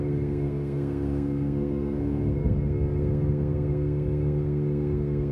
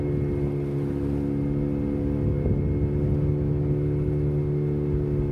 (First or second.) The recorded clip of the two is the second